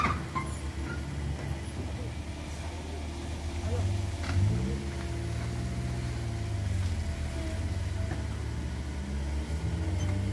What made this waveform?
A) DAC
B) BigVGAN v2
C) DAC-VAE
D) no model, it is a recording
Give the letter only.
D